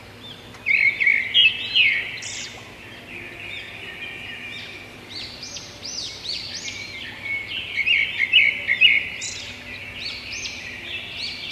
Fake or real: real